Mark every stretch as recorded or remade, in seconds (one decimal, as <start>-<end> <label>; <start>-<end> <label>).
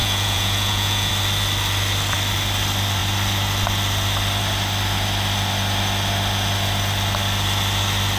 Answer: 0.0-1.1 remade; 1.1-8.2 recorded